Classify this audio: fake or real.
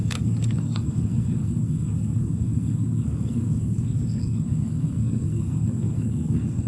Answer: fake